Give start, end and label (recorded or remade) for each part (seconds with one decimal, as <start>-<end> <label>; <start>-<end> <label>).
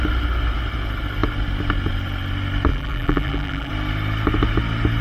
0.0-2.7 recorded; 2.7-3.7 remade; 3.7-5.0 recorded